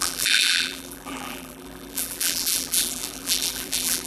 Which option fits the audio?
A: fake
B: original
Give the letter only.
A